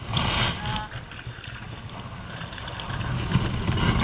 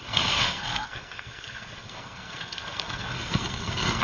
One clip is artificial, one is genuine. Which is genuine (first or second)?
first